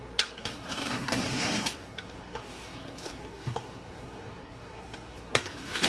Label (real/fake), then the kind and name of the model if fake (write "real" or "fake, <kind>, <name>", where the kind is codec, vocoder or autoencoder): fake, codec, SNAC